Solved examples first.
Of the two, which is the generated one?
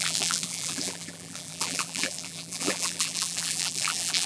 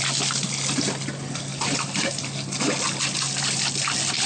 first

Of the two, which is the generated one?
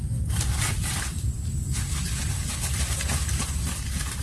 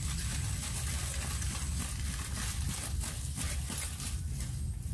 first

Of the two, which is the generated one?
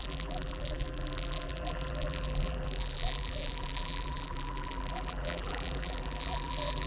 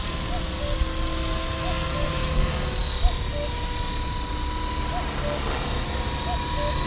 first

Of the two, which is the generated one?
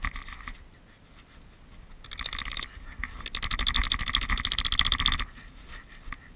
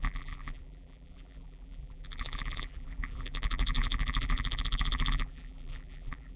second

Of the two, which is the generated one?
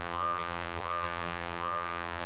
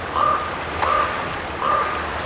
first